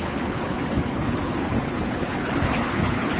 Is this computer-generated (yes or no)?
yes